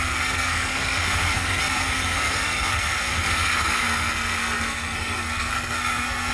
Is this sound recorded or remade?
remade